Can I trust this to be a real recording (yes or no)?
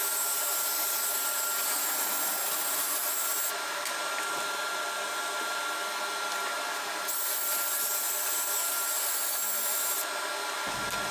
yes